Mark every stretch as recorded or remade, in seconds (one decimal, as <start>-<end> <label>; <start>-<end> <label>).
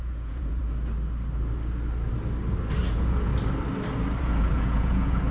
0.0-0.6 remade; 0.6-2.9 recorded; 2.9-3.3 remade; 3.3-4.2 recorded; 4.2-5.3 remade